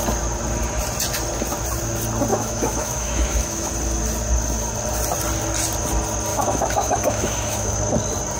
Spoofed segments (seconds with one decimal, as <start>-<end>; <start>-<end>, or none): 2.3-3.7; 6.3-7.8